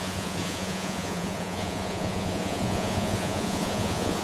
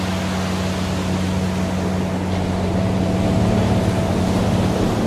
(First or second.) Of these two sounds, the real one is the second